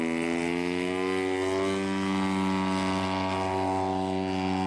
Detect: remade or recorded recorded